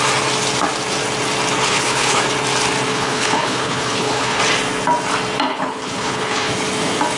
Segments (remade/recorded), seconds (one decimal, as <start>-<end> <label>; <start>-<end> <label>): 0.0-1.6 recorded; 1.6-2.2 remade; 2.2-2.9 recorded; 2.9-4.4 remade; 4.4-5.5 recorded; 5.5-6.5 remade; 6.5-7.2 recorded